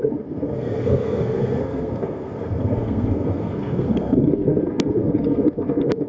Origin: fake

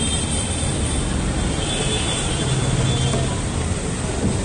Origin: real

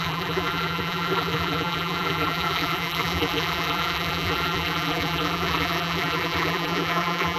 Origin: fake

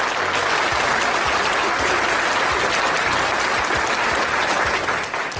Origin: real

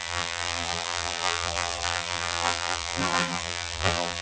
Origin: fake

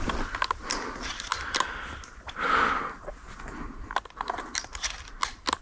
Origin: real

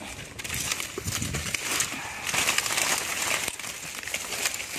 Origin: real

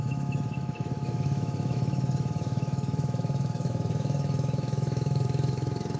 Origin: fake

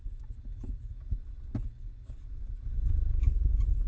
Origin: real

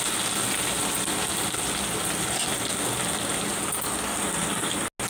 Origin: real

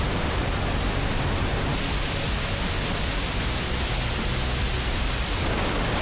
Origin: real